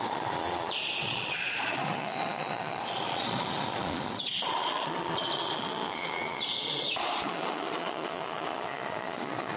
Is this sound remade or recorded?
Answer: remade